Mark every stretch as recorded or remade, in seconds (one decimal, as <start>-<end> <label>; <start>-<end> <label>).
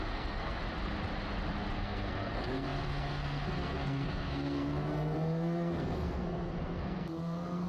0.0-0.6 remade; 0.6-1.7 recorded; 1.7-7.7 remade